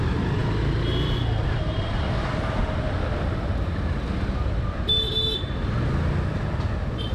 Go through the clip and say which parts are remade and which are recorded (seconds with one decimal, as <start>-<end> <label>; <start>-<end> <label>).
0.0-7.1 recorded